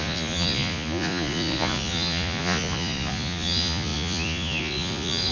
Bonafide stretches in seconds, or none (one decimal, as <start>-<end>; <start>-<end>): none